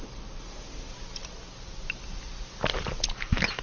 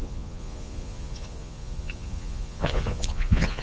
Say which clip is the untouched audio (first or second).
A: first